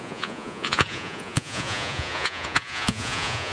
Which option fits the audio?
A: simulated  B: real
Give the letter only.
A